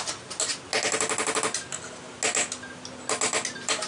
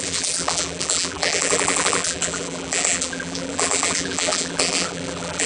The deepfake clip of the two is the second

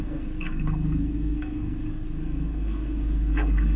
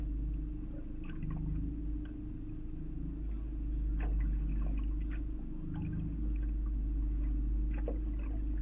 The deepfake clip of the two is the first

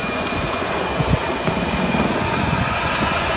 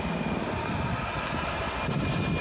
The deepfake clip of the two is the first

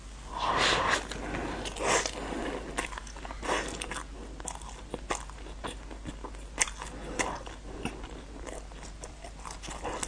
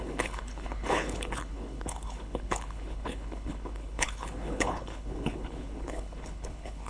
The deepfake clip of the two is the second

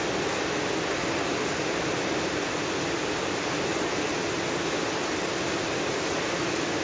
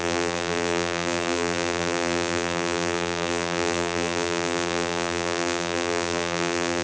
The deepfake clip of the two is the second